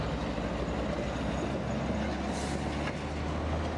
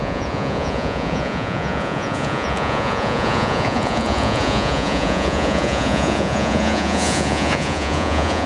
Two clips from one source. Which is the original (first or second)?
first